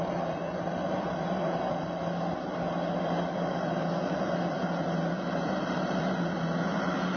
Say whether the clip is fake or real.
real